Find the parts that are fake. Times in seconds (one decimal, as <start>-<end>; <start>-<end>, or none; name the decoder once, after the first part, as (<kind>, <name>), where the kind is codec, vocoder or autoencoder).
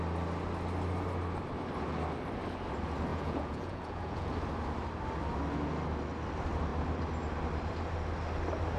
3.1-4.3 (vocoder, Vocos)